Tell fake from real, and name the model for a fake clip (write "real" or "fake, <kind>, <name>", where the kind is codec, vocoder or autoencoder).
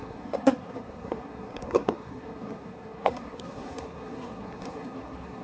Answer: fake, codec, SNAC